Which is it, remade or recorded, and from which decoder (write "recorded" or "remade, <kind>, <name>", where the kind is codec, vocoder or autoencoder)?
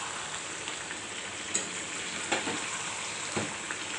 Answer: recorded